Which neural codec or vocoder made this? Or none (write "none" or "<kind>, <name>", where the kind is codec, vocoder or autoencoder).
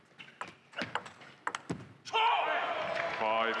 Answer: none